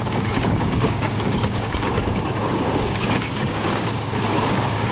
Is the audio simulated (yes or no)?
yes